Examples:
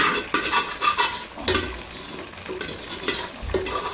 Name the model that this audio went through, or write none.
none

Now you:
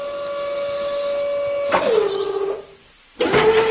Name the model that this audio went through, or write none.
none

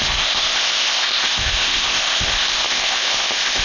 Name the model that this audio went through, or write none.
codec, ZipCodec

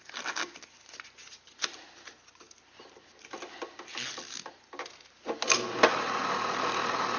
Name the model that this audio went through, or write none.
none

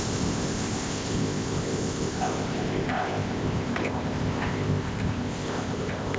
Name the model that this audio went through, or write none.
codec, ZipCodec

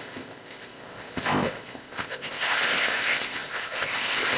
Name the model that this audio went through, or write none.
codec, ZipCodec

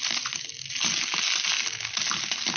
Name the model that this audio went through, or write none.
none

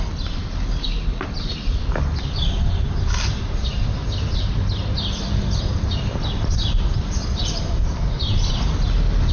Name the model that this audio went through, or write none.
none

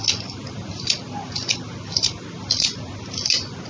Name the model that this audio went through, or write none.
none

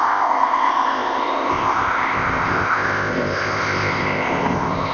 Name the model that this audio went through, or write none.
codec, ZipCodec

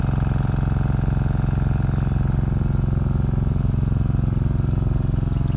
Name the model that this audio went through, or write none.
none